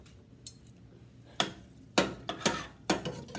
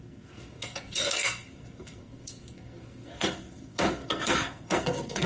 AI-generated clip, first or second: second